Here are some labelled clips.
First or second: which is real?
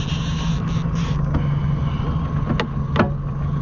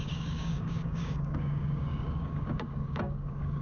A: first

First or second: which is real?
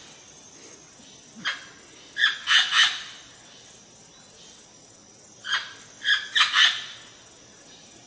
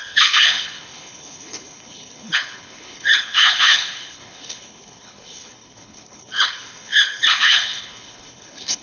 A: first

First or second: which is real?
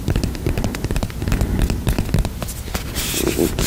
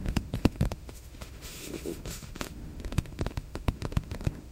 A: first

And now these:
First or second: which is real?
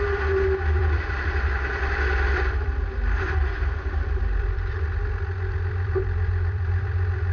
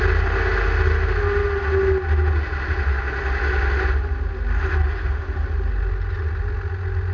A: second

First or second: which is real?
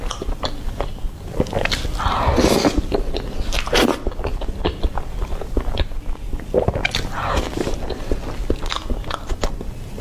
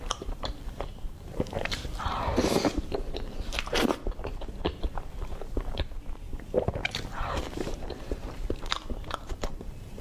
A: first